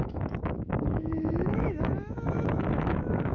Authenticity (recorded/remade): remade